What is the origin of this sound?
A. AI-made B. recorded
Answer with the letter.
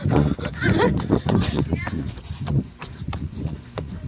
A